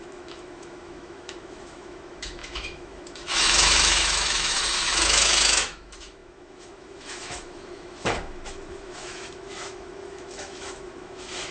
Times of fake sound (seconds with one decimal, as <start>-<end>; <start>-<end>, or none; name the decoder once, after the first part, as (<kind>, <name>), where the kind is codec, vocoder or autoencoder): 0.0-11.5 (autoencoder, DAC-VAE)